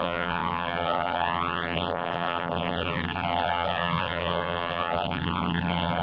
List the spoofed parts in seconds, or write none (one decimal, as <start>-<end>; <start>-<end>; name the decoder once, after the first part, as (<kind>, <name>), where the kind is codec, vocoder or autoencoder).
0.0-6.0 (vocoder, BigVGAN v2)